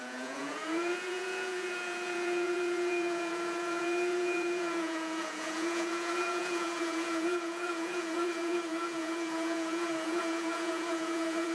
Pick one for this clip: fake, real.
fake